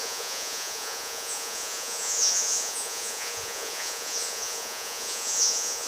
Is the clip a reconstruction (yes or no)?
yes